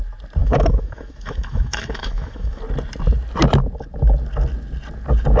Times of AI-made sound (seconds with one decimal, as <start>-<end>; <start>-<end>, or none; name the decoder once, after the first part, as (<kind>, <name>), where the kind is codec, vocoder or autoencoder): 0.4-2.6 (autoencoder, DAC-VAE)